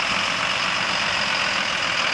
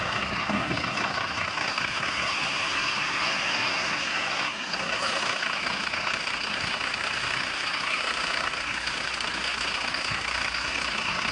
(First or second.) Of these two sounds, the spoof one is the second